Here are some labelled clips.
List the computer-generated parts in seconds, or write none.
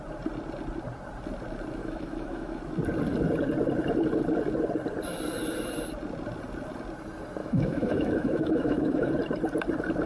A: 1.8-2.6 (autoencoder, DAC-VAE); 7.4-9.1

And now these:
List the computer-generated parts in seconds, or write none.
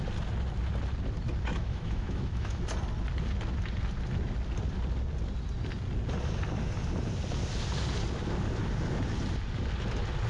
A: 1.5-2.6 (autoencoder, DAC-VAE)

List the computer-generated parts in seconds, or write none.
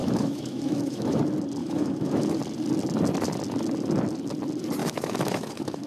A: 0.0-1.2 (autoencoder, DAC-VAE); 1.6-2.4; 4.8-5.9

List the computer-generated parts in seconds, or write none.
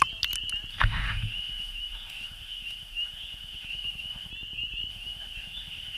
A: 0.7-4.3 (autoencoder, DAC-VAE); 4.9-6.0